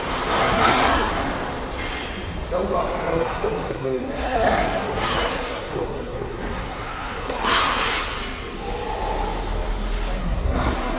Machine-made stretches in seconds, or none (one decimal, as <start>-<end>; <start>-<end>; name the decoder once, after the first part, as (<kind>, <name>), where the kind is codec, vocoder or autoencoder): 0.4-1.1 (codec, SNAC); 3.1-8.2; 10.2-11.0